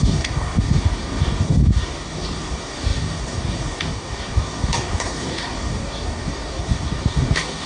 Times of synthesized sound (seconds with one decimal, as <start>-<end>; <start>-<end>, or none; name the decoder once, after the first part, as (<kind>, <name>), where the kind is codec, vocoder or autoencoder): 0.0-7.7 (codec, DAC)